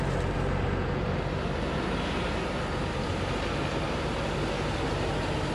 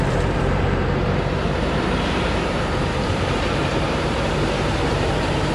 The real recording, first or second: first